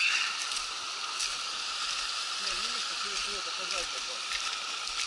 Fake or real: real